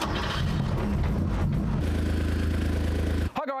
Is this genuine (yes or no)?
yes